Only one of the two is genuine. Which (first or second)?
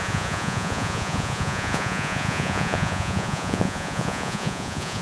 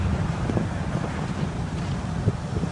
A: second